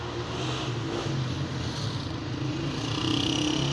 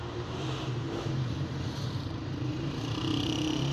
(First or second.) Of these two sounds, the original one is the first